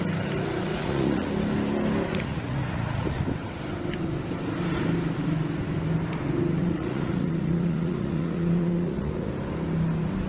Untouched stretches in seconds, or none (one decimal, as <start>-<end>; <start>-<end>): 0.0-0.7; 1.3-2.1; 3.2-6.6; 9.3-10.3